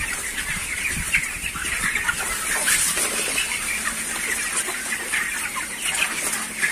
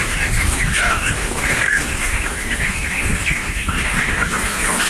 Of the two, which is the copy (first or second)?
second